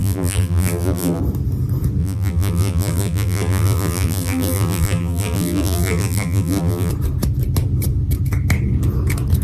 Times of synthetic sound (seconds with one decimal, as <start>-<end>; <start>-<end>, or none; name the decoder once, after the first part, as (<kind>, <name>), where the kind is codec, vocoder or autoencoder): 0.0-1.2 (vocoder, BigVGAN v2); 2.0-6.9